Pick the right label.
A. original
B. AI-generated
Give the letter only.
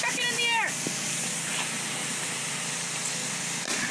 A